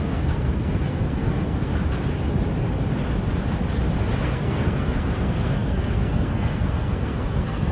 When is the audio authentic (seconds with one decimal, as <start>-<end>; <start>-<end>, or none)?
1.7-4.2